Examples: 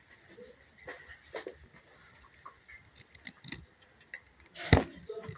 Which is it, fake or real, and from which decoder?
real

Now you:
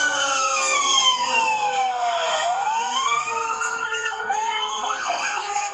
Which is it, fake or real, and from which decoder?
fake, codec, SNAC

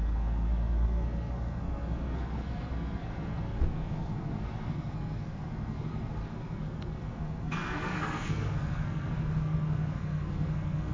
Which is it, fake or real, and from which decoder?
fake, codec, SNAC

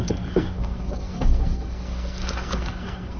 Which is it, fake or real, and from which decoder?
fake, codec, SNAC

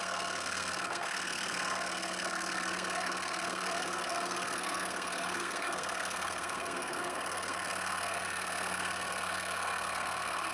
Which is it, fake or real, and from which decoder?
fake, codec, SNAC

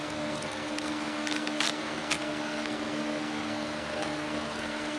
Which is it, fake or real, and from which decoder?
fake, codec, SNAC